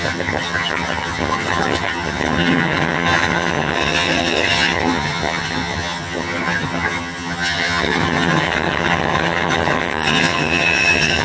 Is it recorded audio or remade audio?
remade